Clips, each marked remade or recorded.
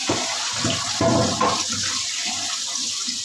recorded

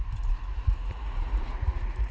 remade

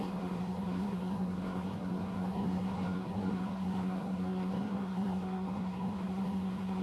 remade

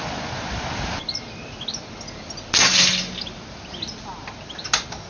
recorded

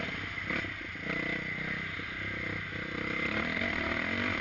recorded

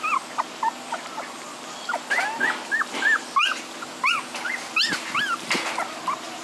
recorded